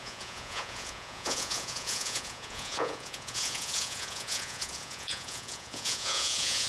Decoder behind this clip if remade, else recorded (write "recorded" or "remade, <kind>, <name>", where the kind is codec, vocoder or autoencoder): remade, vocoder, Vocos